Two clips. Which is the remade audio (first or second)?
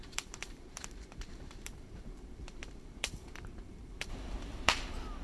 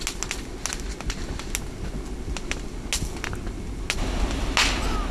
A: first